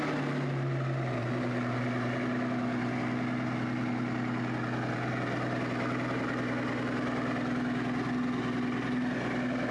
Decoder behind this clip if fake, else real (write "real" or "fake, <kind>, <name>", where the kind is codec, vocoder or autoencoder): real